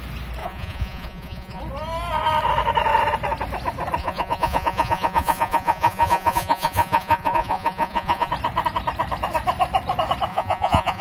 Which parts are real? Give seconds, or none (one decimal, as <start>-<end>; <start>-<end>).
0.0-0.4; 1.6-4.0; 8.3-10.3